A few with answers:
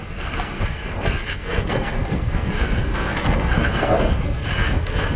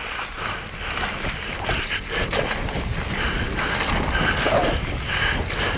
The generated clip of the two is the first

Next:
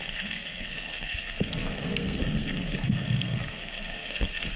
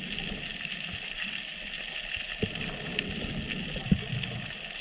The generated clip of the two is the first